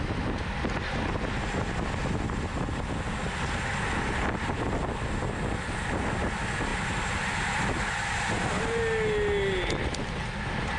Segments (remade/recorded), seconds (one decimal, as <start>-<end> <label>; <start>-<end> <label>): 0.0-10.8 recorded